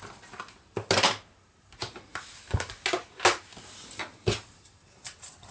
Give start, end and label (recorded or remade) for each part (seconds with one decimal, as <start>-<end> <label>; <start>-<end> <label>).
0.0-5.5 recorded